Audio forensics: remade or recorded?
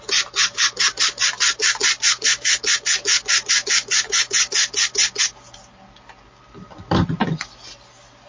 recorded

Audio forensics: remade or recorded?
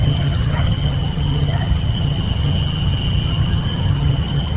remade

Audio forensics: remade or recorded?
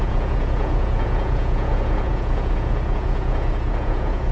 remade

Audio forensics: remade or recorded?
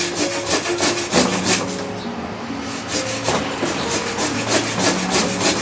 recorded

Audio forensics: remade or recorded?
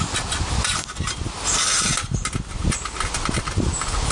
recorded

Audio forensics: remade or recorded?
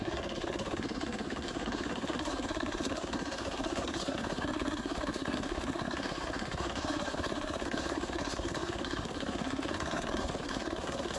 remade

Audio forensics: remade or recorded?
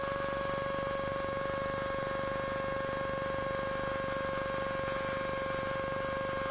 recorded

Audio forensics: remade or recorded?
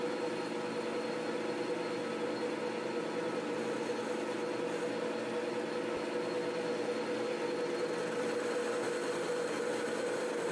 recorded